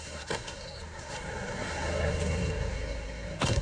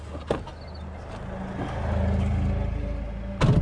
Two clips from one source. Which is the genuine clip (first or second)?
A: second